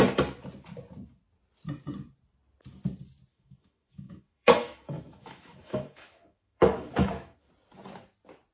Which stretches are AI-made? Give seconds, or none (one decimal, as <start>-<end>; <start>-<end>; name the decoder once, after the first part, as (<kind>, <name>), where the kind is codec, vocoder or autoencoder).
3.3-7.5 (autoencoder, DAC-VAE)